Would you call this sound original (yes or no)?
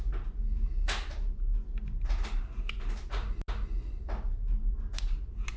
yes